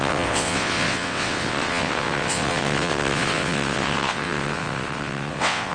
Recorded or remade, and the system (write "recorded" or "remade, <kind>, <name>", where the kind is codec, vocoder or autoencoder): remade, vocoder, WaveNeXt